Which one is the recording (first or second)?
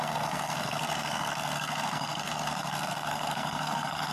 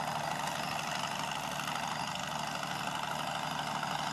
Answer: second